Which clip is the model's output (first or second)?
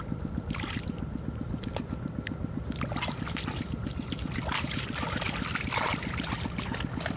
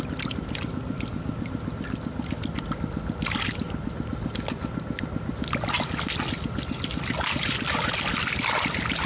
first